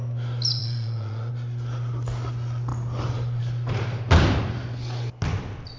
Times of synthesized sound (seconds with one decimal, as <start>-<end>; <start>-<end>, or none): 0.6-1.3